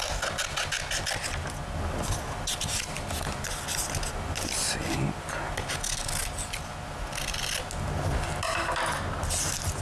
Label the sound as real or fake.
real